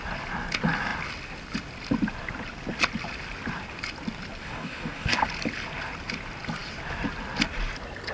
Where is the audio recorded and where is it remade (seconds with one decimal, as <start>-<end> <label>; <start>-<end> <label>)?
0.0-4.4 recorded; 4.4-5.2 remade; 5.2-8.1 recorded